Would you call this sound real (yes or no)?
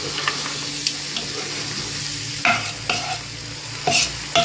yes